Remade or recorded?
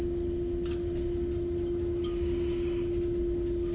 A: recorded